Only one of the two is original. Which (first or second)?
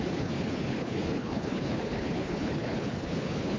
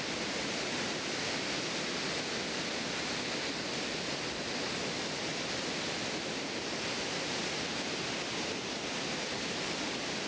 second